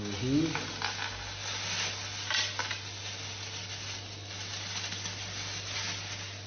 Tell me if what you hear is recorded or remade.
recorded